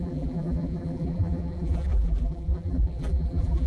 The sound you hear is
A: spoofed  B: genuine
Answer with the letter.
A